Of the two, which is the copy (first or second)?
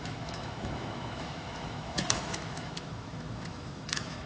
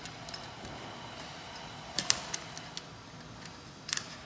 first